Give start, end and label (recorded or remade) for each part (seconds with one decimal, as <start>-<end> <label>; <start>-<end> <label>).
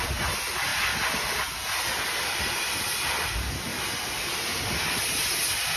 0.0-5.8 recorded